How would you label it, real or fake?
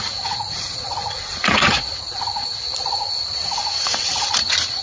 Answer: fake